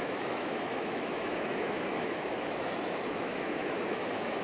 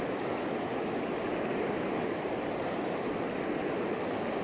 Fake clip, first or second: first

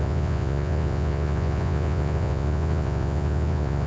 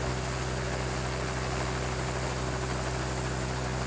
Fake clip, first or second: first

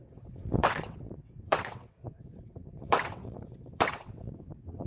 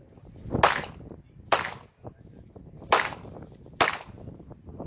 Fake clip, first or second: first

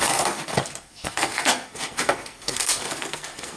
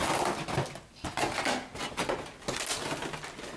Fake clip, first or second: first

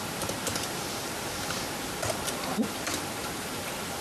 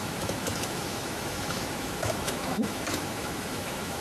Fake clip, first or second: second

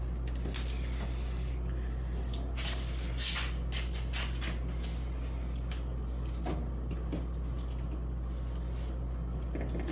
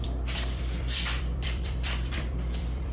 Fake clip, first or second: second